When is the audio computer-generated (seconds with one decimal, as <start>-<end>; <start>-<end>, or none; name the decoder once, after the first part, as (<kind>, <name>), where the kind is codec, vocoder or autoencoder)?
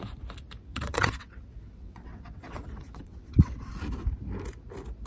0.6-3.7 (vocoder, WaveNeXt)